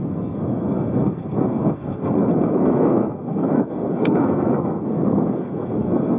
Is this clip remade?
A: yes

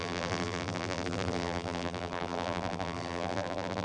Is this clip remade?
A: yes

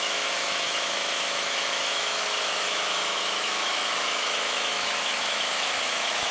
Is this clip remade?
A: yes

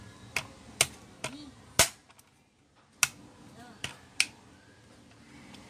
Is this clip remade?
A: no